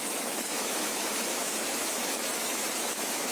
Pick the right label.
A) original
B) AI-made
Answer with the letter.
B